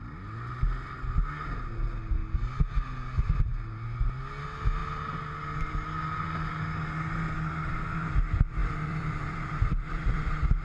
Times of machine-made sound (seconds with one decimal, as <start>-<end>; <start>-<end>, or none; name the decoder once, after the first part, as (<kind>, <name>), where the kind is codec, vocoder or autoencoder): 8.6-10.2 (vocoder, BigVGAN v2)